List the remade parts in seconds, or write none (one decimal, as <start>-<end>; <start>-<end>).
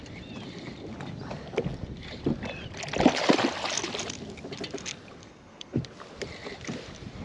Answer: 5.2-5.8